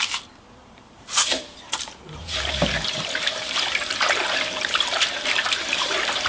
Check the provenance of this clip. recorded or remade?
remade